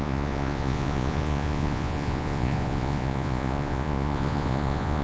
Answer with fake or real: fake